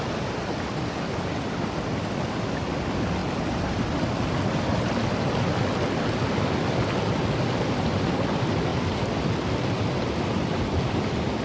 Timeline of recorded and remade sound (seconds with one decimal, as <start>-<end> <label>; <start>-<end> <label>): 0.0-11.4 recorded